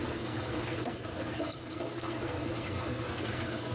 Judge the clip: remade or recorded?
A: remade